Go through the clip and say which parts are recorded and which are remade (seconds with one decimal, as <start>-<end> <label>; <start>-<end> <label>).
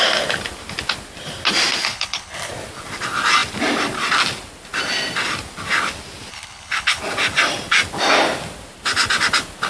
0.0-1.8 recorded; 1.8-2.5 remade; 2.5-6.3 recorded; 6.3-7.0 remade; 7.0-9.7 recorded